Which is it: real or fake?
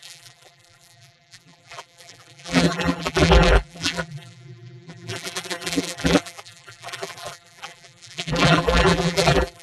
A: fake